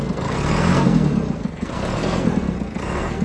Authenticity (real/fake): fake